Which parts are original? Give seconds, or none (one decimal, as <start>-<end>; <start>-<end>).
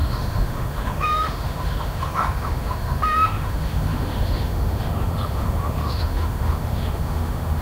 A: none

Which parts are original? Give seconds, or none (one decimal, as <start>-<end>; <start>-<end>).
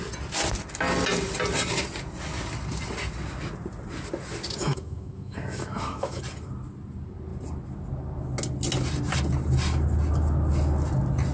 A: 0.0-4.6; 6.2-11.3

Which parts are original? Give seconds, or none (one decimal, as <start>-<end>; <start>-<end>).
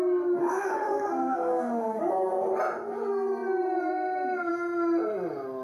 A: 0.0-0.4; 2.0-5.6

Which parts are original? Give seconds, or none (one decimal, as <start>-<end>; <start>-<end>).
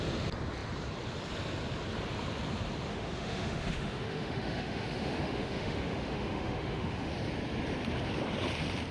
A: 0.0-2.9; 7.1-8.9